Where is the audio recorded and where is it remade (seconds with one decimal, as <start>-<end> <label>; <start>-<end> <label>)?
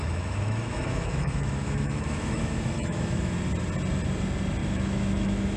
0.0-3.3 remade; 3.3-4.6 recorded; 4.6-5.6 remade